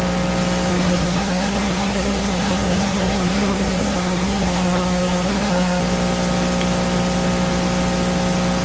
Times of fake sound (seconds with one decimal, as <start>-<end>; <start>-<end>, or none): 0.7-5.8